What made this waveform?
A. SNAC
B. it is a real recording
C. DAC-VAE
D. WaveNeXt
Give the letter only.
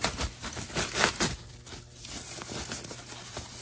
B